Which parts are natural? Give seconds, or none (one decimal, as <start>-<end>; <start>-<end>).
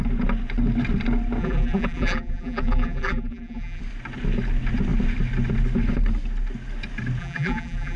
0.0-1.4; 3.8-7.2